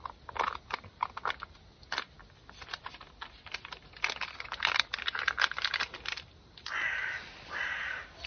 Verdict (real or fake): real